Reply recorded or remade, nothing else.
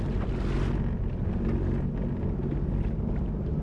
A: recorded